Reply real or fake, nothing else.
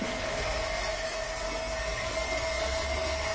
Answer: fake